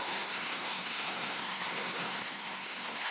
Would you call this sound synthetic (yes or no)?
yes